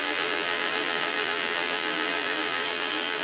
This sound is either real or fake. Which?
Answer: fake